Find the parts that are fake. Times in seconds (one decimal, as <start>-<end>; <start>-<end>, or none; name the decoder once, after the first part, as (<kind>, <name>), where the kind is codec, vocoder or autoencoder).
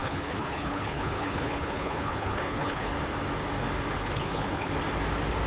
0.0-2.9 (codec, HILCodec); 4.0-4.7